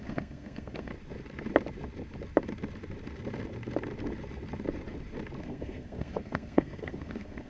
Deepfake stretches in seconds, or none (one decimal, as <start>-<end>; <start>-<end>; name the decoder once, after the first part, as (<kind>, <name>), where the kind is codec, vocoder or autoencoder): 0.0-0.9 (codec, SNAC); 5.4-7.5